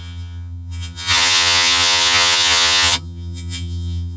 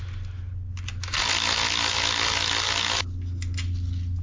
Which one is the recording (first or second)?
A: second